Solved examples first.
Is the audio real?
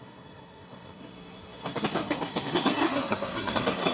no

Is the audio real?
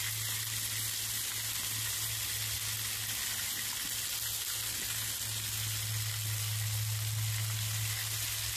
yes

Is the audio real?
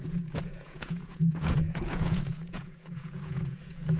no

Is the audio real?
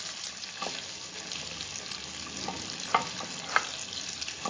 yes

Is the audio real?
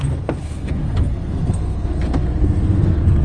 no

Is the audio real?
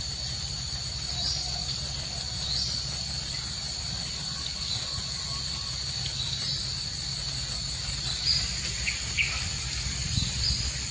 yes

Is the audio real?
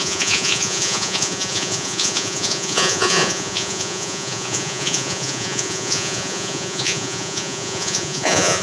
no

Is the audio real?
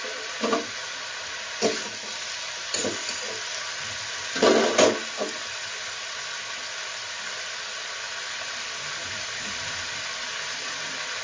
yes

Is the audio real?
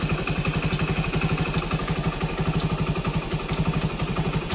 yes